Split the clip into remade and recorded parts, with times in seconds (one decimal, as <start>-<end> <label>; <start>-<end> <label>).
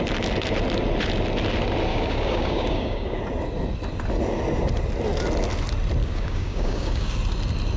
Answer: 0.0-1.9 recorded; 1.9-3.2 remade; 3.2-6.0 recorded; 6.0-7.1 remade; 7.1-7.8 recorded